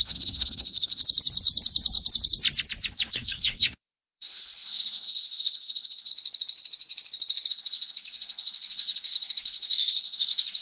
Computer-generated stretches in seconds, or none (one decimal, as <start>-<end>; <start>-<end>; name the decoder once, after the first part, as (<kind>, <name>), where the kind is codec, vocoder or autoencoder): 0.0-1.0 (codec, SNAC); 3.1-6.1; 7.5-10.6